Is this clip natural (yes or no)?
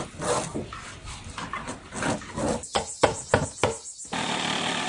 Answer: yes